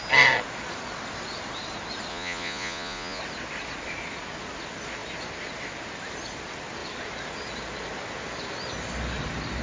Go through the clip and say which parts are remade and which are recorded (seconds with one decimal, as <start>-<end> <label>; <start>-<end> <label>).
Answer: 0.0-2.1 recorded; 2.1-3.2 remade; 3.2-9.6 recorded